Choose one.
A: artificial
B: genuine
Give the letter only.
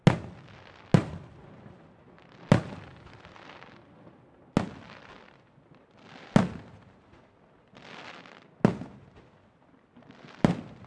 B